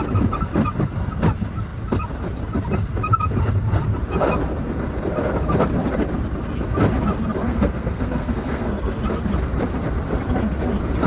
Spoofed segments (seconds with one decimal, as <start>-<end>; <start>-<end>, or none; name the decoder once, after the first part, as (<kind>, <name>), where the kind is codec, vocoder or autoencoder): 7.5-9.0 (codec, SNAC)

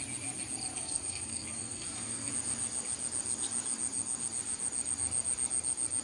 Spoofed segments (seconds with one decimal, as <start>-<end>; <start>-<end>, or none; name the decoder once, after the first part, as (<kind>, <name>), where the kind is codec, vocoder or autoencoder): 0.7-2.3 (codec, SNAC)

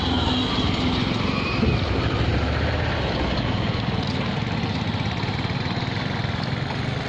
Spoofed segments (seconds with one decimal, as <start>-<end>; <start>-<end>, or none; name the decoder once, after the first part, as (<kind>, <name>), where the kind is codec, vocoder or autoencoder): none

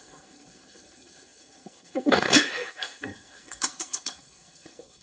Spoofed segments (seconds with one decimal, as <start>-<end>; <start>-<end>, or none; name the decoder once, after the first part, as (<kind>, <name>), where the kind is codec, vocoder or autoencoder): 0.0-5.0 (codec, SNAC)

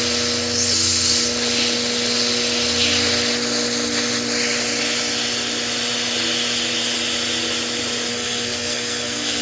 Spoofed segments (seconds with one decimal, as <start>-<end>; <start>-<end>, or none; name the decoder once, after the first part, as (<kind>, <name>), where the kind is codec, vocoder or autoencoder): 8.1-9.4 (codec, SNAC)

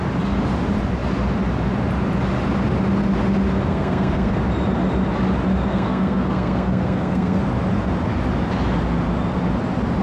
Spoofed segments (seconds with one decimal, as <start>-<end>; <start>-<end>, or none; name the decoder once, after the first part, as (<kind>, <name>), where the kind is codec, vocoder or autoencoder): 3.7-4.4 (codec, SNAC); 5.7-7.4

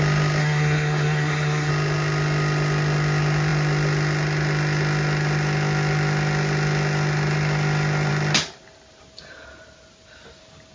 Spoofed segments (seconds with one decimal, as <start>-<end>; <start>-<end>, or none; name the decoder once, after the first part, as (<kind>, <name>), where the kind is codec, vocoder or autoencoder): 0.4-1.7 (codec, SNAC)

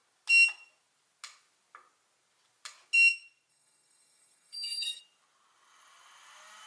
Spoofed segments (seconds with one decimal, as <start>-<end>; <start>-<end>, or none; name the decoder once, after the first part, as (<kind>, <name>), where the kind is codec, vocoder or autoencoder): 3.5-5.0 (codec, SNAC)